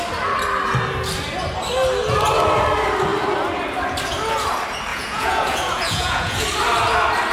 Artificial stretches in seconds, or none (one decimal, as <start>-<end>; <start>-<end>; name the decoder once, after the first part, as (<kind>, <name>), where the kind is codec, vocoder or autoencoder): 4.9-6.4 (vocoder, Vocos)